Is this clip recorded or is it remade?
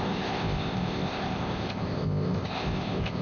remade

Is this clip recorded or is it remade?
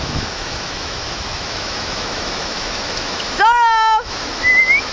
remade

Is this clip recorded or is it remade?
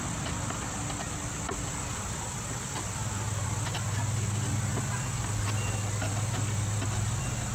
recorded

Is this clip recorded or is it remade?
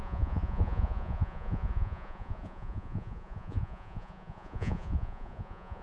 remade